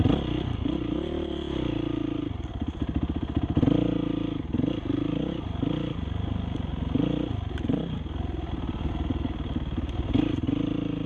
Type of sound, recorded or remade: recorded